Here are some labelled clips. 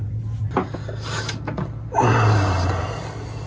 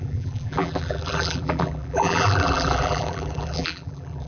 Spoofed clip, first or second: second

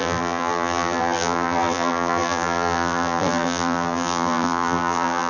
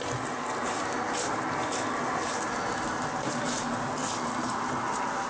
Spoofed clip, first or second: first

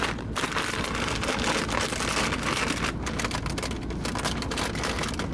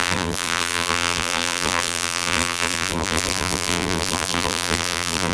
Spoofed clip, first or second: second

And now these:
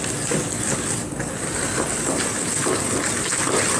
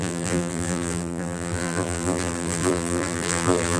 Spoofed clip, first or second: second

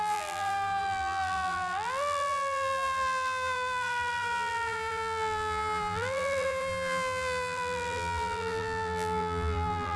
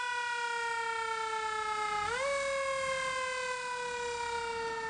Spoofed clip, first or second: first